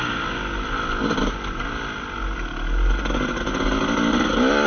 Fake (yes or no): no